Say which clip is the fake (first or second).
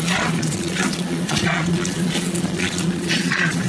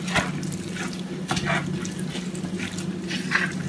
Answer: first